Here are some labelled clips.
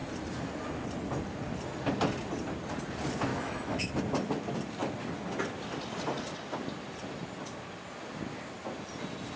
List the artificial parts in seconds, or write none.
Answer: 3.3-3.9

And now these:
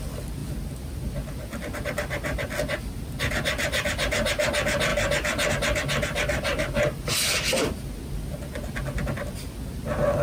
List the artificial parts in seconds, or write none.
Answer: none

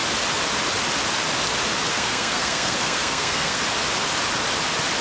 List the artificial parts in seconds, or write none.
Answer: 1.9-3.6

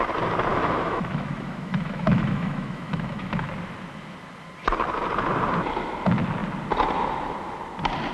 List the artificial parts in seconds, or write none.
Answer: 0.5-3.5